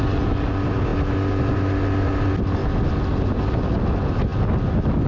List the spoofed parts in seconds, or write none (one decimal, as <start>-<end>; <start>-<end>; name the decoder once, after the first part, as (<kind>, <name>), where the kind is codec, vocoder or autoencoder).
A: none